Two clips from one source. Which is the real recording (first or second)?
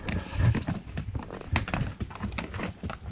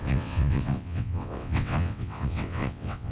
first